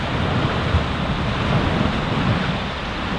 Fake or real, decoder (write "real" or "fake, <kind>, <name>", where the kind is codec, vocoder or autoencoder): real